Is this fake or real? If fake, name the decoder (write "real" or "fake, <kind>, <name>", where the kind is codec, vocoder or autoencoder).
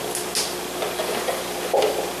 real